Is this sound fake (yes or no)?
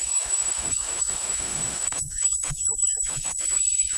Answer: yes